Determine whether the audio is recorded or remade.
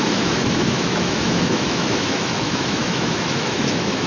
remade